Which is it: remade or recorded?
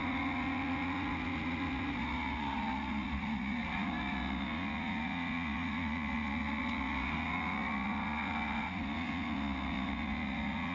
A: remade